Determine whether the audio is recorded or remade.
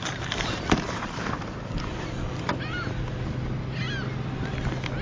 recorded